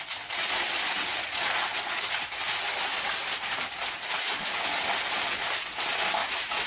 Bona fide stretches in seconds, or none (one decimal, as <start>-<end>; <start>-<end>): 0.0-6.2